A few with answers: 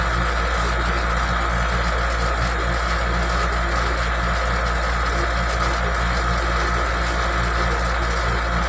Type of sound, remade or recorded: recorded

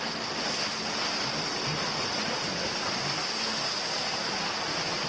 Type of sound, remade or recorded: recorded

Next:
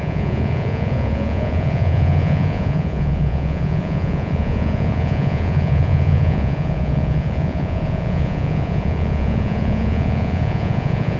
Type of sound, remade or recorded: remade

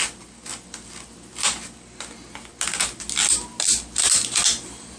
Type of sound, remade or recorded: recorded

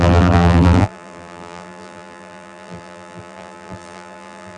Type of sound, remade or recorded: remade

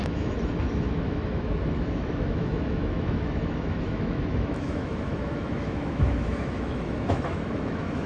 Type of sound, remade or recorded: remade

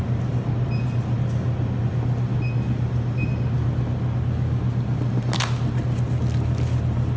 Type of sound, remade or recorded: recorded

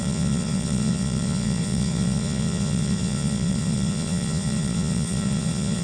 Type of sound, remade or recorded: remade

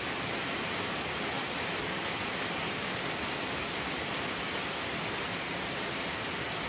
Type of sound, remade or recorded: recorded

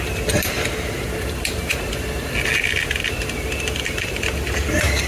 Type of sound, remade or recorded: recorded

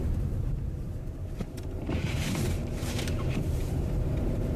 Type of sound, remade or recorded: remade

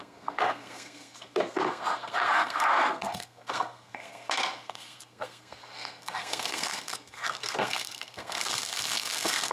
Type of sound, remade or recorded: remade